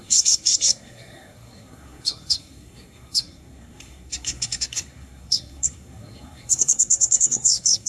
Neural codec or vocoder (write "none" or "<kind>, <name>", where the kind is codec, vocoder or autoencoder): codec, SNAC